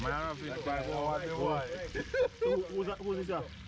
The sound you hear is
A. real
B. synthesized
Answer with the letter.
A